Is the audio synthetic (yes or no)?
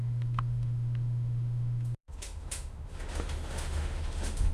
yes